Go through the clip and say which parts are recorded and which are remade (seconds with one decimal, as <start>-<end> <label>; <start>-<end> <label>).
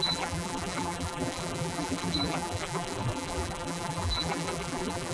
0.0-5.1 remade